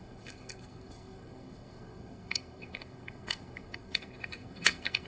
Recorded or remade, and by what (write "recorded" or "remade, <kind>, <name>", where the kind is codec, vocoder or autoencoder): remade, codec, SNAC